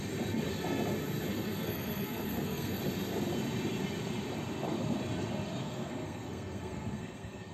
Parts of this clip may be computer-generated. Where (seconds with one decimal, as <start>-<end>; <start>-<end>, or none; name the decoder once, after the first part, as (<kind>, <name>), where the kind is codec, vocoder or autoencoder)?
1.3-2.8 (codec, SNAC); 5.6-7.5